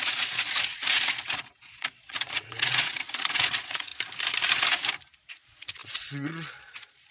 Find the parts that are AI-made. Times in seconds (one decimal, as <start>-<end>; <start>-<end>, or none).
0.0-3.9; 5.2-7.1